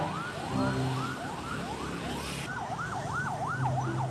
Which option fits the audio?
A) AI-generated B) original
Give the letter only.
B